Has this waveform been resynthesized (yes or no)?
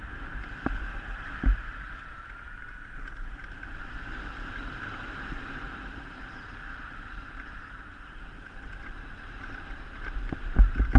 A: yes